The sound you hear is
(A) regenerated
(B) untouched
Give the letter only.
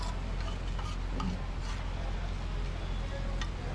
B